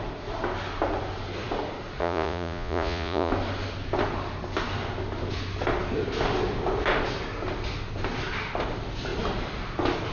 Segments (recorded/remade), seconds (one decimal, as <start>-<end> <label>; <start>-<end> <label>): 0.0-2.0 recorded; 2.0-3.3 remade; 3.3-10.1 recorded